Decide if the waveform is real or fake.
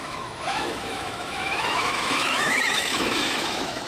fake